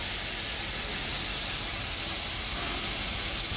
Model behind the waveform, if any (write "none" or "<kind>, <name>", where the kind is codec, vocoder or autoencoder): none